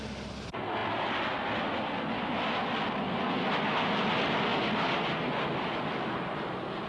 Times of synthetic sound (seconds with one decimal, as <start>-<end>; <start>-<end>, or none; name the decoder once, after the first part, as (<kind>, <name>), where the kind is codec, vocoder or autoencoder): none

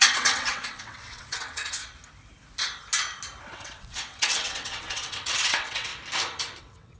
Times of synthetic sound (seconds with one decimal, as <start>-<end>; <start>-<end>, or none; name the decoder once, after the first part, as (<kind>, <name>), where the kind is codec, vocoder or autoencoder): 0.0-1.8 (vocoder, WaveNeXt); 3.4-5.9; 6.6-7.0

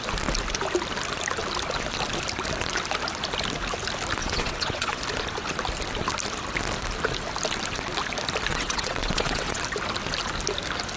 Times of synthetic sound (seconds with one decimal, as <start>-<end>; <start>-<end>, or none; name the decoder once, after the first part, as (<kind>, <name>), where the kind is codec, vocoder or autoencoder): 4.2-5.0 (vocoder, WaveNeXt); 8.5-9.6

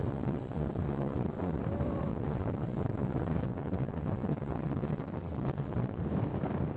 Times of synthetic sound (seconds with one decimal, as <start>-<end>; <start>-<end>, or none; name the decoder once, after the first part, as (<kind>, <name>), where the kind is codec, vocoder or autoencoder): 0.0-1.6 (vocoder, WaveNeXt); 2.1-6.0

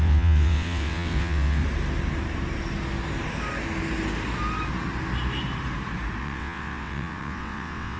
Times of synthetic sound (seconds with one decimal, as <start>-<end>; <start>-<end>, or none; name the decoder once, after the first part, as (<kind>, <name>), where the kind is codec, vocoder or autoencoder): 0.0-1.6 (vocoder, WaveNeXt); 6.2-8.0

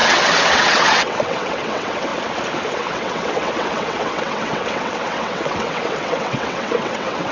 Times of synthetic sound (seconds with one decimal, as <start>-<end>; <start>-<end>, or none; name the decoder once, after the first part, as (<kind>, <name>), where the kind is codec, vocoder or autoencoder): 0.0-2.1 (vocoder, WaveNeXt); 2.7-7.3

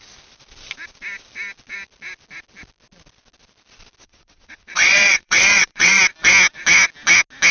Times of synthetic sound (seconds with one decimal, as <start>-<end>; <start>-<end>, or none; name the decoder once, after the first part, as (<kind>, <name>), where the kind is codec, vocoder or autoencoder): 4.0-6.0 (vocoder, WaveNeXt)

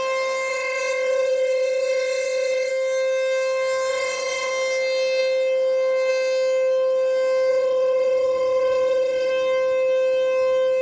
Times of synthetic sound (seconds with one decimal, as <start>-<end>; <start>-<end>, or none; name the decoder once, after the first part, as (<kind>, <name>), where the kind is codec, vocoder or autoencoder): 0.5-2.7 (vocoder, WaveNeXt); 3.9-4.5; 7.5-9.3